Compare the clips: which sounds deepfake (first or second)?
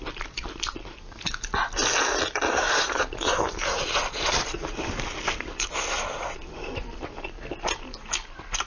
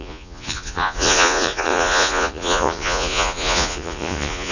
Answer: second